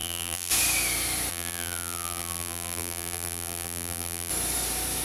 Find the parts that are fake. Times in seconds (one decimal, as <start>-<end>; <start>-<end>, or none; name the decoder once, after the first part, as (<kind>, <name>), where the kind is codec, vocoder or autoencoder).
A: 0.0-0.5 (vocoder, BigVGAN v2); 1.3-4.3